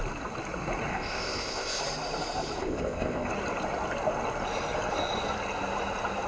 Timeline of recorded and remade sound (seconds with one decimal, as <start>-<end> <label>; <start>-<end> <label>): 0.0-0.9 recorded; 0.9-1.8 remade; 1.8-2.6 recorded; 2.6-3.3 remade; 3.3-6.3 recorded